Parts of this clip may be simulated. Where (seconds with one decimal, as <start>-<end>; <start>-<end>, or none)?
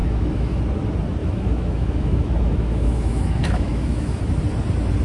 0.0-0.6; 1.2-4.2